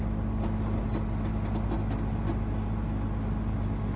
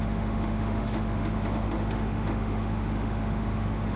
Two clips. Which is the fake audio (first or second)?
second